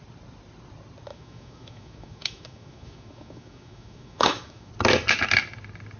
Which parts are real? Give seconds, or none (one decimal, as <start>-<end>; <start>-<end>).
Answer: 0.0-1.1; 4.7-6.0